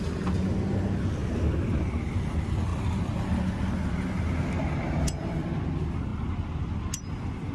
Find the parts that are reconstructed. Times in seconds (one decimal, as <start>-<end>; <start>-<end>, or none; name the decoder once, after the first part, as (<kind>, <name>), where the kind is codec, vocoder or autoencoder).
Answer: none

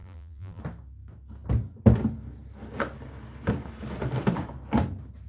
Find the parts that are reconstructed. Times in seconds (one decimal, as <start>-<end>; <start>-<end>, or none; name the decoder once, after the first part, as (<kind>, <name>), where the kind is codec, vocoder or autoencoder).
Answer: 0.0-0.6 (vocoder, BigVGAN v2)

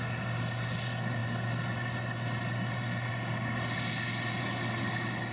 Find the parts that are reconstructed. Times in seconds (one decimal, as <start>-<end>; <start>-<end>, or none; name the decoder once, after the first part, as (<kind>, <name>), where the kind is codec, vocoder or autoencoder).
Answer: none